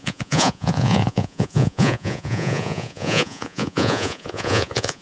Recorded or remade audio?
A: remade